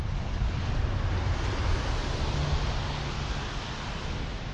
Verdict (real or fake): real